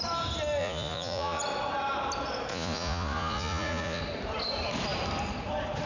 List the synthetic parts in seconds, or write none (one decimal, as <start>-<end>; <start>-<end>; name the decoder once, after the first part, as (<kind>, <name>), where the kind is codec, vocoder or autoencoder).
0.6-1.4 (vocoder, Vocos); 2.5-4.0